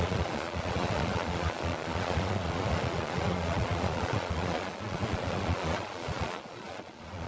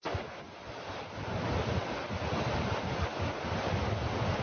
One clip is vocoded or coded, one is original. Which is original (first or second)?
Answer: second